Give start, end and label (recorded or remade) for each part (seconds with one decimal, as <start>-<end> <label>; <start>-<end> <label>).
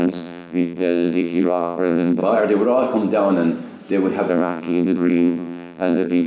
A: 0.0-2.2 remade; 2.2-4.3 recorded; 4.3-6.3 remade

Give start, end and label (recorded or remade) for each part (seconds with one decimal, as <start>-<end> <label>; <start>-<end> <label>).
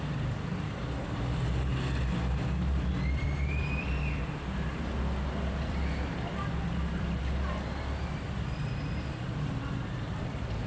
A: 0.0-1.7 remade; 1.7-2.9 recorded; 2.9-10.7 remade